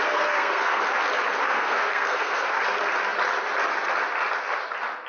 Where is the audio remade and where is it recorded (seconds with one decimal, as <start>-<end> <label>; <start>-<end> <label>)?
0.0-0.8 remade; 0.8-1.4 recorded; 1.4-2.6 remade; 2.6-5.1 recorded